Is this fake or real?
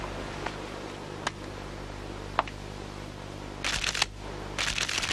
real